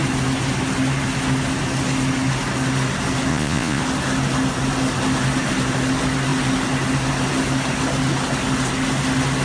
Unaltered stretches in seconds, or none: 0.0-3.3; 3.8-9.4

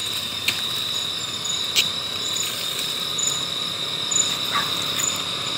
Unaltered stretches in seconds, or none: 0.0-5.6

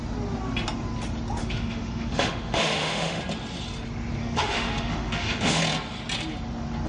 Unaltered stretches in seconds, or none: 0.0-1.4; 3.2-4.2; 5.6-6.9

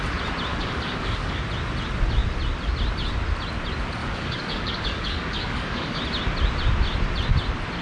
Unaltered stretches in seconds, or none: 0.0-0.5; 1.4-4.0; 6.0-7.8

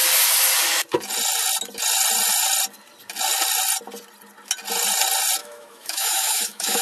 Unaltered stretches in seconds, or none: 0.0-5.4

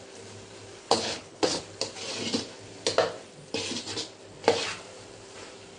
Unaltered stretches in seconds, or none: 0.0-0.8; 1.6-5.8

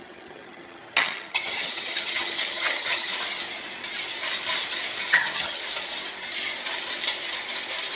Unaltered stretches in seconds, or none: 3.1-5.0; 5.6-8.0

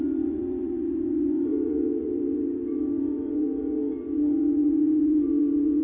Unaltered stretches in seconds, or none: none